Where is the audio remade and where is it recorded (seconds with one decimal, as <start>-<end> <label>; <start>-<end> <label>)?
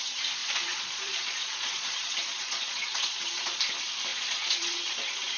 0.0-0.4 recorded; 0.4-3.6 remade; 3.6-4.1 recorded; 4.1-5.4 remade